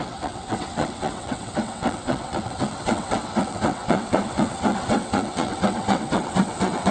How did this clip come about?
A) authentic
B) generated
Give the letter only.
B